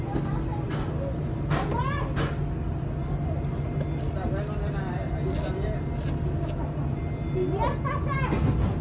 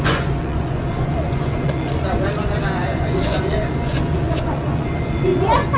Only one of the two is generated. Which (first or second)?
second